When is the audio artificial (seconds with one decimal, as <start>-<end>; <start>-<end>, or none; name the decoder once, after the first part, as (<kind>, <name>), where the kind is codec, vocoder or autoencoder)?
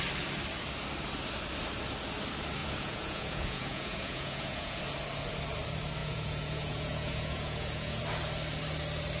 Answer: 2.6-4.8 (vocoder, Vocos); 6.0-8.0